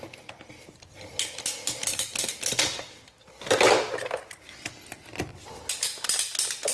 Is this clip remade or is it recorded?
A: recorded